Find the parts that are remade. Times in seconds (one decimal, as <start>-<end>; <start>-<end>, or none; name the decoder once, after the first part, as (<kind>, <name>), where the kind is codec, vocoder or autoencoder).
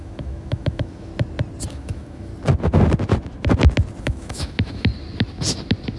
0.0-1.1 (autoencoder, DAC-VAE); 1.7-2.3; 4.0-4.9